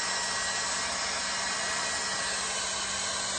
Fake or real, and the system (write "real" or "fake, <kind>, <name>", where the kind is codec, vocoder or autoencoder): real